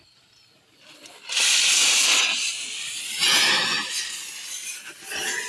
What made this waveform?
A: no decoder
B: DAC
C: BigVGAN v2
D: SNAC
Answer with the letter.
C